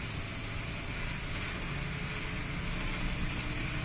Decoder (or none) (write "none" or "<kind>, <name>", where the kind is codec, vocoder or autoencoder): none